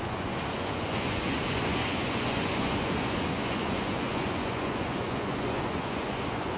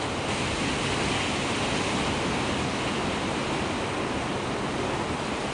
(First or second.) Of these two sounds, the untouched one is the second